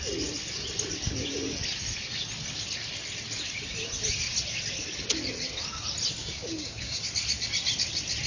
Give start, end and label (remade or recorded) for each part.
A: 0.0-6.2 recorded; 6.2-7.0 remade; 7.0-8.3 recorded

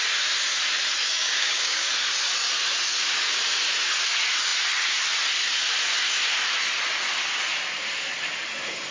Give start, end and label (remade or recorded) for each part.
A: 0.0-1.1 recorded; 1.1-1.9 remade; 1.9-8.9 recorded

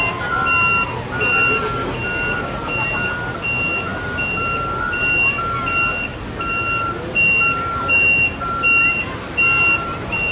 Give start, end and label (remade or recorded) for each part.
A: 0.0-10.3 recorded

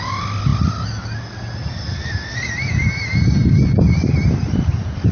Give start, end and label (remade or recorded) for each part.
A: 0.0-5.1 recorded